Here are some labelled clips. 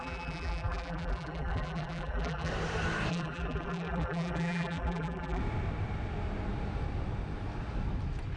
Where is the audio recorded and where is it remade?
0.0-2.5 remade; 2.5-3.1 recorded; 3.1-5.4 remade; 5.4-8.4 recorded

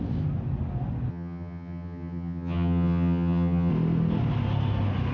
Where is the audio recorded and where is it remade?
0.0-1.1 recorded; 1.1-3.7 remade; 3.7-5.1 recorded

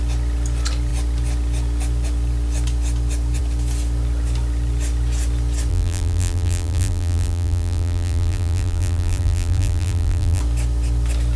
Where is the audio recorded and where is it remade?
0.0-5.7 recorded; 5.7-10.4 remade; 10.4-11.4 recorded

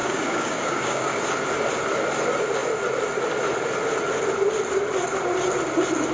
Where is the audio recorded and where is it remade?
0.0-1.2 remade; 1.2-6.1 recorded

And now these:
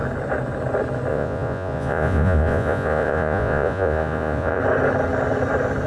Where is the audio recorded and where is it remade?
0.0-1.1 recorded; 1.1-4.6 remade; 4.6-5.9 recorded

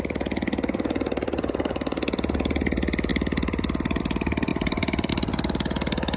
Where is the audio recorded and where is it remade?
0.0-3.1 recorded; 3.1-4.0 remade; 4.0-4.5 recorded; 4.5-5.1 remade; 5.1-6.2 recorded

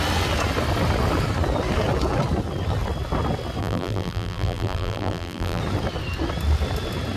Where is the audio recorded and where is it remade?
0.0-3.6 recorded; 3.6-5.6 remade; 5.6-7.2 recorded

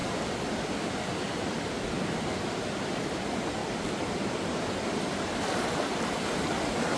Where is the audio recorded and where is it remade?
0.0-7.0 remade